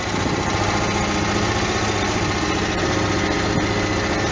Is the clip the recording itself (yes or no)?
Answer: yes